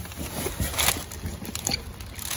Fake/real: real